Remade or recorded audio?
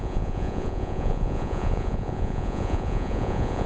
remade